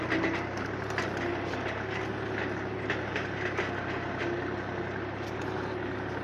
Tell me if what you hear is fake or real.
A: real